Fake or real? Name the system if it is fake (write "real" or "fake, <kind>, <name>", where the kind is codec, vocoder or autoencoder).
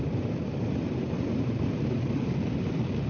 fake, vocoder, BigVGAN v2